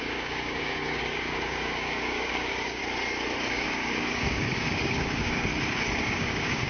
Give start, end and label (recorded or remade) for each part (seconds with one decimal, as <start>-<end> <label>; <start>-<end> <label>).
0.0-2.8 remade; 2.8-3.5 recorded; 3.5-5.5 remade; 5.5-6.0 recorded; 6.0-6.7 remade